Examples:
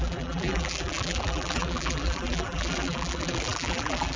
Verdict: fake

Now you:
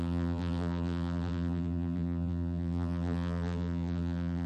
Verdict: fake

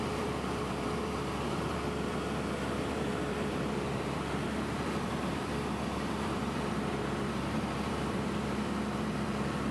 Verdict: fake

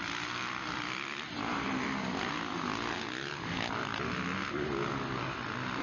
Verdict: real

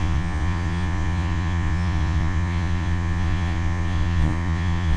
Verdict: fake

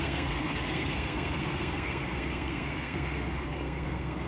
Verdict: fake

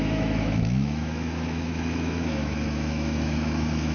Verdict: fake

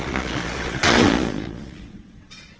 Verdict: fake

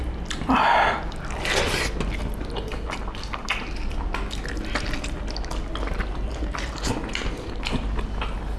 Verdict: real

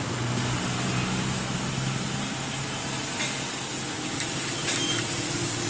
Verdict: real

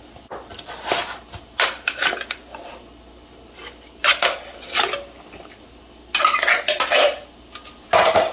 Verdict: real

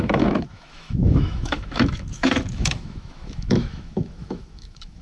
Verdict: fake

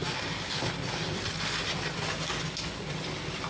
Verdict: real